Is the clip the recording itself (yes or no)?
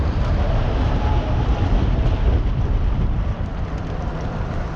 no